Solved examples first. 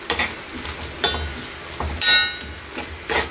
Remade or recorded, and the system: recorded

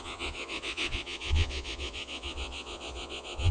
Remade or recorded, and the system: remade, vocoder, Vocos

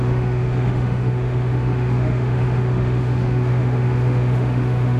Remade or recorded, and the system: remade, autoencoder, DAC-VAE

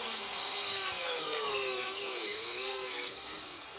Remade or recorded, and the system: remade, codec, SNAC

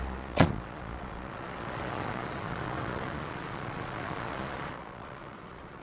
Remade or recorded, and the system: remade, vocoder, Vocos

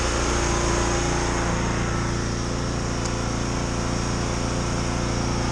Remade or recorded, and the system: recorded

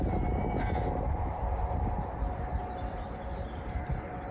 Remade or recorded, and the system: recorded